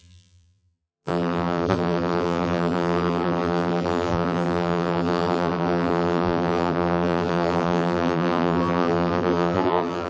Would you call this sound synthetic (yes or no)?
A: yes